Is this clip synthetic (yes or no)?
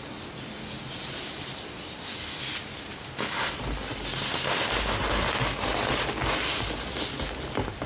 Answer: no